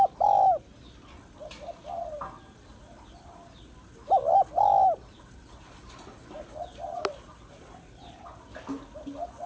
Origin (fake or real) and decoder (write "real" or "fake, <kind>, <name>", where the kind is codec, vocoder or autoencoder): real